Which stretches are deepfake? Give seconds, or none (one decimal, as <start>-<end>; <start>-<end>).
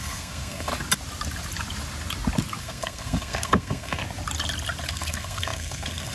0.0-0.7; 2.6-4.0; 4.9-6.1